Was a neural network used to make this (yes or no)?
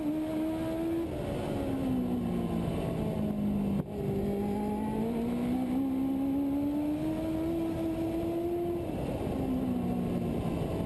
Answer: no